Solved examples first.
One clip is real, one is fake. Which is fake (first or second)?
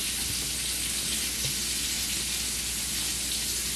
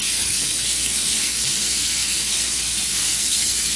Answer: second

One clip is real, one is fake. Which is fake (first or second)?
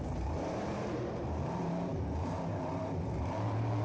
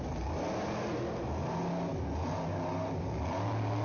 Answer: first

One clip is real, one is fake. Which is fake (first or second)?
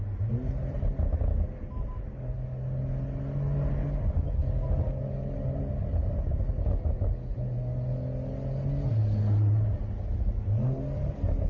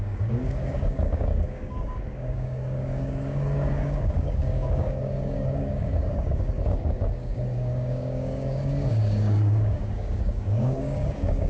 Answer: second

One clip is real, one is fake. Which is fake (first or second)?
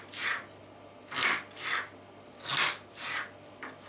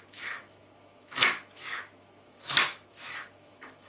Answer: second